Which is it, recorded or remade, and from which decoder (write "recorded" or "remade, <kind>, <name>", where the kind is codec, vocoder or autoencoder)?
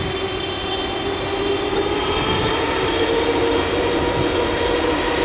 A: recorded